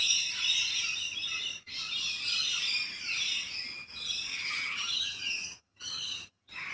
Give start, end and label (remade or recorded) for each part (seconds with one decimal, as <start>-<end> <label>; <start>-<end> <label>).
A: 0.0-4.3 recorded; 4.3-6.7 remade